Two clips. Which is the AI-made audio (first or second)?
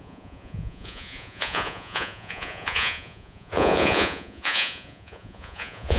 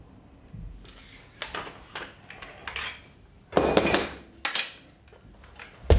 first